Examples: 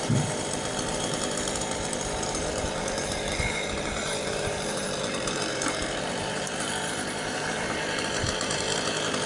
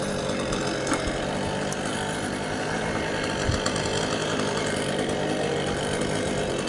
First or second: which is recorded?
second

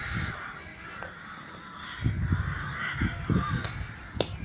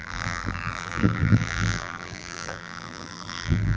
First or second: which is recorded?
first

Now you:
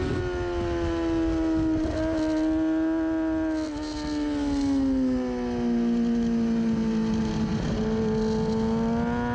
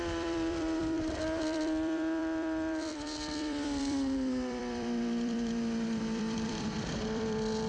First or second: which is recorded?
first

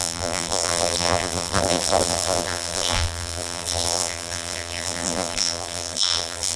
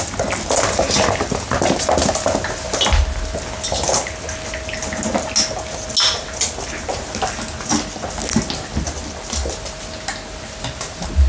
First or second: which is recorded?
second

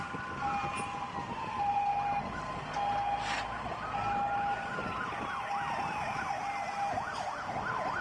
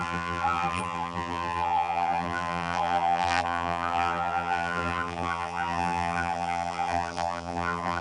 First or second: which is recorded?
first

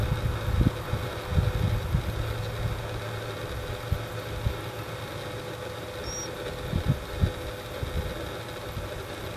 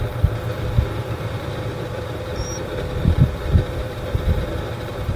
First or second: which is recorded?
first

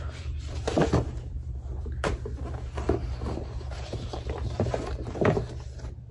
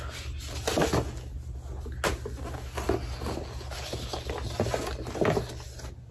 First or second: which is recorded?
second